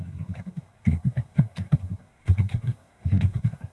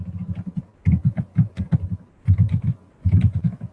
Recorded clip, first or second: second